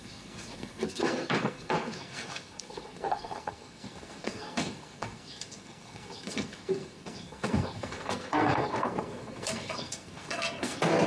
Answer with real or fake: fake